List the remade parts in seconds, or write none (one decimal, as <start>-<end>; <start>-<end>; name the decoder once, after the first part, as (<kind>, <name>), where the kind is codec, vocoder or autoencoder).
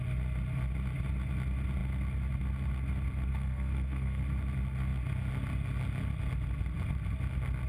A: 3.3-4.2 (codec, SNAC)